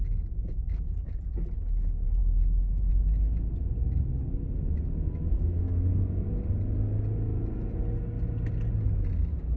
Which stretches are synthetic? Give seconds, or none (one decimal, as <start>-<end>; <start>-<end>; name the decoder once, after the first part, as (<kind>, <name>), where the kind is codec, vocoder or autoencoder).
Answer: 5.3-6.0 (codec, SNAC)